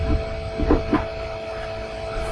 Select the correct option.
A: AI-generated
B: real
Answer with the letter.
B